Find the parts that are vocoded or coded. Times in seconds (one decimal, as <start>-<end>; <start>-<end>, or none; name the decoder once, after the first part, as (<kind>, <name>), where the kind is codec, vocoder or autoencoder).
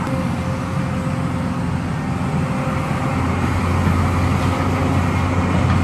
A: 3.1-3.6 (vocoder, BigVGAN v2)